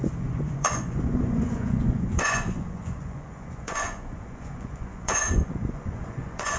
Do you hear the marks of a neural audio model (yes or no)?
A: yes